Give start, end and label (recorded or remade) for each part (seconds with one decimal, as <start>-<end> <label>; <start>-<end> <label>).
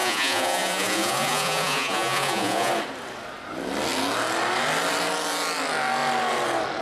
0.0-2.7 remade; 2.7-6.8 recorded